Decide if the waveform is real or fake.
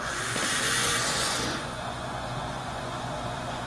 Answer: fake